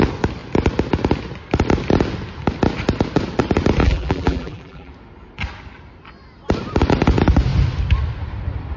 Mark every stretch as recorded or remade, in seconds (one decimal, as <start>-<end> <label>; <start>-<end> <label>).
0.0-3.8 recorded; 3.8-4.9 remade; 4.9-8.8 recorded